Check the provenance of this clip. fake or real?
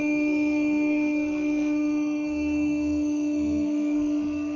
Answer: fake